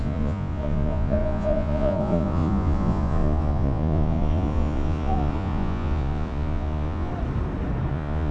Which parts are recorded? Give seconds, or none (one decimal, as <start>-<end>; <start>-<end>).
7.1-7.9